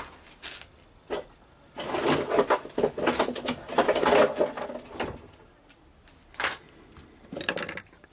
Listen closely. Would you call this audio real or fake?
real